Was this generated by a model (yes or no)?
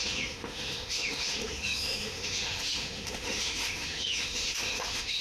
yes